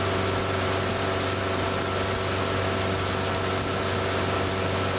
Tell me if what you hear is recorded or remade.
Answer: recorded